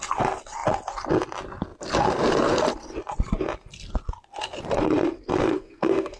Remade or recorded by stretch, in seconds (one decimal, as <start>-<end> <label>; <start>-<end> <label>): 0.0-5.4 recorded; 5.4-6.2 remade